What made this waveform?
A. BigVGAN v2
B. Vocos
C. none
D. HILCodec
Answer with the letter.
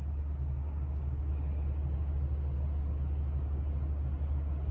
C